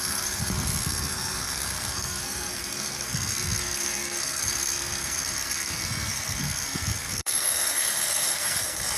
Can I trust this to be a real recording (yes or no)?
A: no